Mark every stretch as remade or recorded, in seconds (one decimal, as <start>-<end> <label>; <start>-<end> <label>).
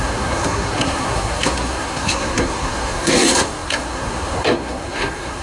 0.0-5.4 remade